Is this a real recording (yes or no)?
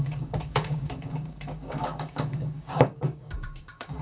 no